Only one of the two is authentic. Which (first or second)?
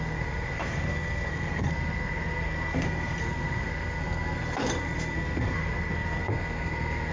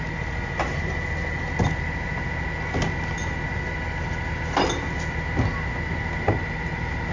second